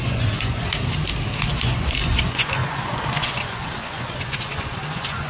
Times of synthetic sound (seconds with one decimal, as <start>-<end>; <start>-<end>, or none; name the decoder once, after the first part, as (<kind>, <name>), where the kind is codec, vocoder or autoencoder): 0.0-0.7 (vocoder, Vocos); 1.5-5.3